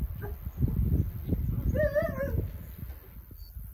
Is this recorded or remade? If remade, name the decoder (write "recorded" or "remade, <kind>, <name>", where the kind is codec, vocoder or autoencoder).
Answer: recorded